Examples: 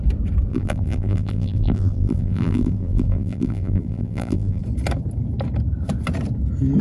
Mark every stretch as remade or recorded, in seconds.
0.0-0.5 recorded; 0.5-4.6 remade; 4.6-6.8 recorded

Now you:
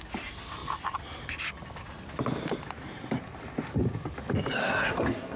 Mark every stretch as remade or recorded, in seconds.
0.0-4.6 recorded; 4.6-5.4 remade

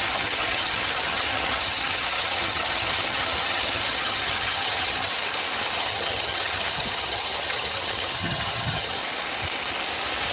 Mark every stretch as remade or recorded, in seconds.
0.0-5.1 remade; 5.1-5.8 recorded; 5.8-9.0 remade; 9.0-10.3 recorded

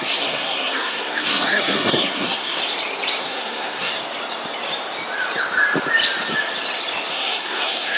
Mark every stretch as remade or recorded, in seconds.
0.0-2.6 remade; 2.6-3.2 recorded; 3.2-3.9 remade; 3.9-7.1 recorded; 7.1-8.0 remade

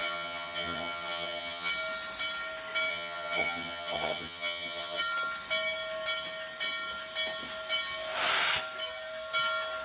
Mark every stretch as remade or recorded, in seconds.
0.0-1.7 remade; 1.7-2.9 recorded; 2.9-5.0 remade; 5.0-9.8 recorded

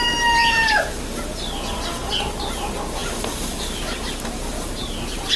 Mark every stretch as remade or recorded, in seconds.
0.0-0.4 recorded; 0.4-2.1 remade; 2.1-3.0 recorded; 3.0-4.5 remade; 4.5-5.4 recorded